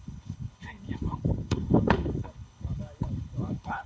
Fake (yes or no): yes